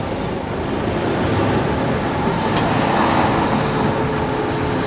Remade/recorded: recorded